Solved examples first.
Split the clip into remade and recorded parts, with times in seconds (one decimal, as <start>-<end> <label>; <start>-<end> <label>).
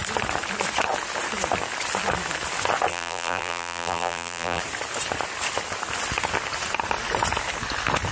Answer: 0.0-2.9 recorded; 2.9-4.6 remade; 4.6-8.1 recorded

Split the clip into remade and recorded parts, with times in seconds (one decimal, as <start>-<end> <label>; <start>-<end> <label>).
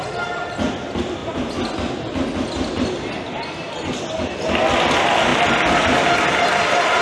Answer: 0.0-7.0 recorded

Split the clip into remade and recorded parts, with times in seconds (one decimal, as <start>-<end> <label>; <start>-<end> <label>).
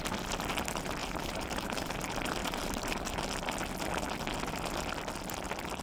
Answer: 0.0-1.0 recorded; 1.0-1.9 remade; 1.9-2.4 recorded; 2.4-3.3 remade; 3.3-5.8 recorded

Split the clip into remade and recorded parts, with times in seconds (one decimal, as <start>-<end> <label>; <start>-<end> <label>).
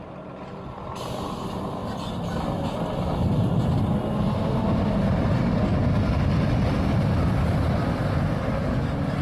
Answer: 0.0-9.2 recorded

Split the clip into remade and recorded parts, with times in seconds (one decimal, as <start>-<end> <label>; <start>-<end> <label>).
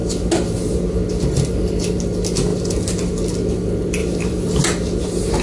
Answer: 0.0-4.0 recorded; 4.0-4.6 remade; 4.6-5.4 recorded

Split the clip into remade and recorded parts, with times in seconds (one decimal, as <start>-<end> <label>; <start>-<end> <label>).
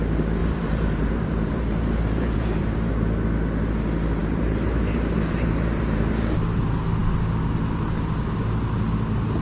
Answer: 0.0-0.4 recorded; 0.4-2.9 remade; 2.9-4.2 recorded; 4.2-6.6 remade; 6.6-9.4 recorded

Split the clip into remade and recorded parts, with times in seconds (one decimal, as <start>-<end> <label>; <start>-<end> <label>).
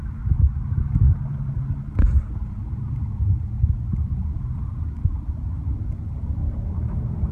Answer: 0.0-2.4 recorded; 2.4-5.8 remade; 5.8-7.3 recorded